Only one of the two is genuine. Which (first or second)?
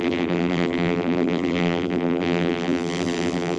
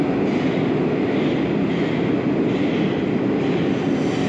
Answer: second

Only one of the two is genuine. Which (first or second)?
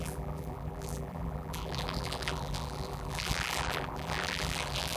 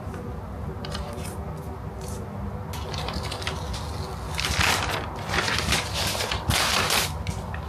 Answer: second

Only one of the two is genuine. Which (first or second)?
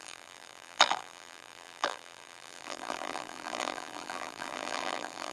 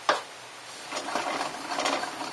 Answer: second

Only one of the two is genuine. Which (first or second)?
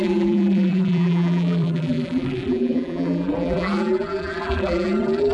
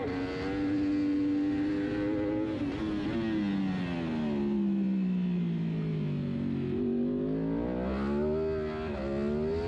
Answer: second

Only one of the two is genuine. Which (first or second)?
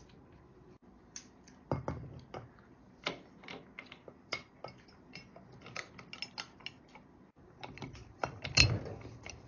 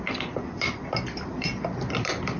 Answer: first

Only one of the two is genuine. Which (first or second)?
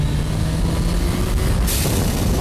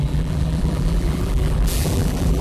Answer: first